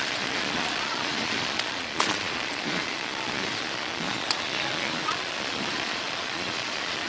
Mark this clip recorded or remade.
remade